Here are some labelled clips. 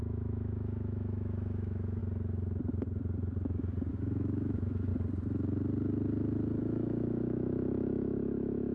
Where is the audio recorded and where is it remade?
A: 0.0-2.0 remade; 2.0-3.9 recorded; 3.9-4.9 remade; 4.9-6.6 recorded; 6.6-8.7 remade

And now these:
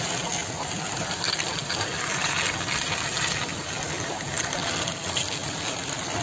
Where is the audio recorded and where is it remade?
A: 0.0-6.2 recorded

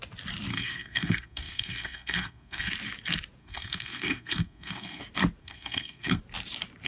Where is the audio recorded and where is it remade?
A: 0.0-0.5 recorded; 0.5-2.7 remade; 2.7-3.4 recorded; 3.4-5.0 remade; 5.0-5.4 recorded; 5.4-6.2 remade; 6.2-6.9 recorded

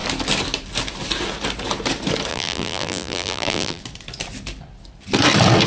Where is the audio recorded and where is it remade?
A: 0.0-2.3 recorded; 2.3-3.8 remade; 3.8-5.7 recorded

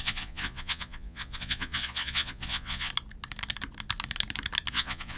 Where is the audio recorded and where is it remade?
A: 0.0-2.9 remade; 2.9-4.7 recorded; 4.7-5.2 remade

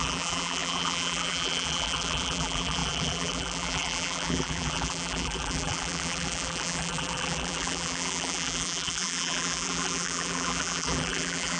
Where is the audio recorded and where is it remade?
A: 0.0-11.6 remade